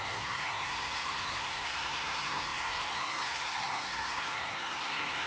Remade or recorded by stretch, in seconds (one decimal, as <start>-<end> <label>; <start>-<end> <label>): 0.0-5.3 remade